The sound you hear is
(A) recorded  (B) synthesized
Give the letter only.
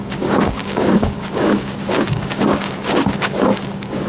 B